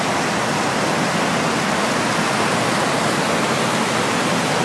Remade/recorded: recorded